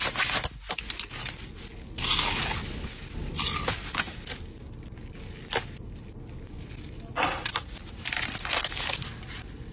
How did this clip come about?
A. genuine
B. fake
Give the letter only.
A